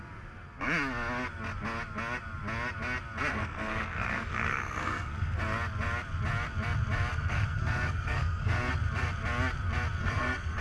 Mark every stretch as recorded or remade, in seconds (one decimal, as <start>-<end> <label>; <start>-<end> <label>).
0.0-3.3 recorded; 3.3-5.4 remade; 5.4-7.1 recorded; 7.1-8.7 remade; 8.7-10.0 recorded; 10.0-10.6 remade